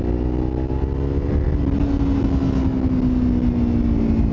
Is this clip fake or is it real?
real